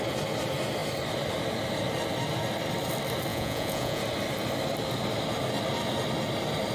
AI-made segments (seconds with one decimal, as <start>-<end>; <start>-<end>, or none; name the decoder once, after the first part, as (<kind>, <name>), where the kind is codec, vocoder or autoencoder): 3.3-4.0 (vocoder, Vocos)